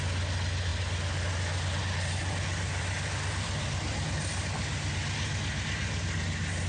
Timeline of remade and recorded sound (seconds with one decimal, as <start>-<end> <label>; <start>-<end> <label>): 0.0-6.7 recorded